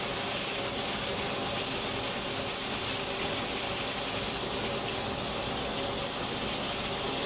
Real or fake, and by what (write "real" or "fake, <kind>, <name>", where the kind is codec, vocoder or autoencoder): real